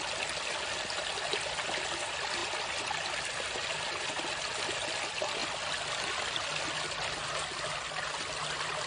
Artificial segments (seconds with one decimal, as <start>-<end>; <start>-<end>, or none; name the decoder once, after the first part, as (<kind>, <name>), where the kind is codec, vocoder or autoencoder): none